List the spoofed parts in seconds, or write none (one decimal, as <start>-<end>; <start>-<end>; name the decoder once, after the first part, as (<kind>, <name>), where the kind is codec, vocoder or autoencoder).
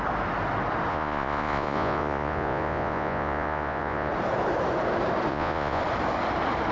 0.9-4.1 (vocoder, Vocos); 5.3-5.8